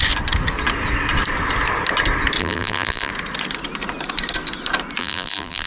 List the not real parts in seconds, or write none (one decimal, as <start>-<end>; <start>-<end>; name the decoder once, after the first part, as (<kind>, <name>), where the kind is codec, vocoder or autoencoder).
2.4-3.1 (vocoder, BigVGAN v2); 5.0-5.7